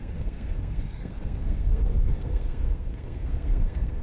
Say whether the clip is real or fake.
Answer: fake